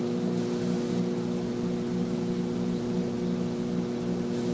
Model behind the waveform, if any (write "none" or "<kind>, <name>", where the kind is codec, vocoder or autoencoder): none